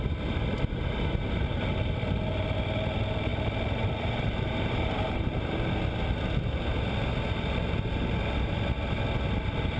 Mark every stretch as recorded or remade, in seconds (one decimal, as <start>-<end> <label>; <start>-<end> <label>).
0.0-3.3 recorded; 3.3-6.2 remade; 6.2-9.8 recorded

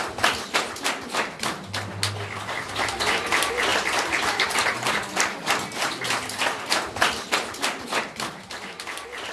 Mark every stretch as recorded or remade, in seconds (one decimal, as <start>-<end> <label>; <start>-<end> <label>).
0.0-3.7 recorded; 3.7-8.1 remade; 8.1-9.3 recorded

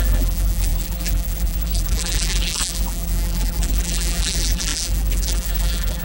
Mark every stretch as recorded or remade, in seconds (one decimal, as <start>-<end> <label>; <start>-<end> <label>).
0.0-6.0 remade